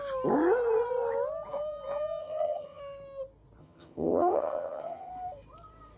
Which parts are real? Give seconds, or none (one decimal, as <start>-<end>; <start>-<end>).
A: 0.0-2.2; 2.8-3.6; 5.1-6.0